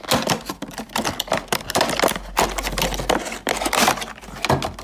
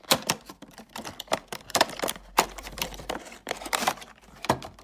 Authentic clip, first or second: first